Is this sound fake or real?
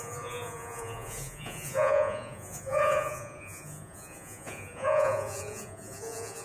fake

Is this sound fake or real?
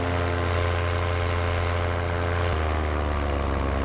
real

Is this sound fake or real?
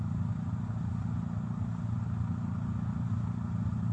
real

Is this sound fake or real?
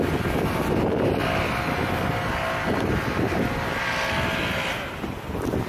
real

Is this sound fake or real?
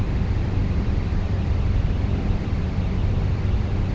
real